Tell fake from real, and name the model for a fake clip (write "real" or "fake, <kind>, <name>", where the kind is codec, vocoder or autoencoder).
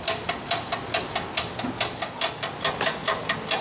real